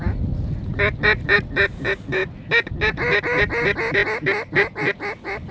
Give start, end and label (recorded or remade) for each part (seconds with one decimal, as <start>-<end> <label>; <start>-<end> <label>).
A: 0.0-5.5 recorded